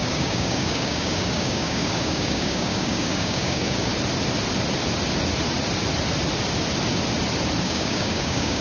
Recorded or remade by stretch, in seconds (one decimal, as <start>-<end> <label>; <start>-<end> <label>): 0.0-3.9 remade; 3.9-7.6 recorded; 7.6-8.6 remade